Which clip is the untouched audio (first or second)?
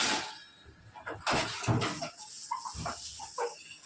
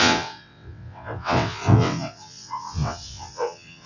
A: first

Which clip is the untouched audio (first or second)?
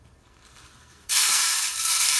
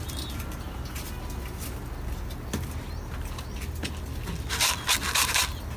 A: second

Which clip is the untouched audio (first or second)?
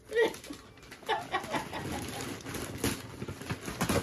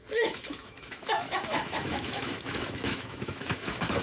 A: first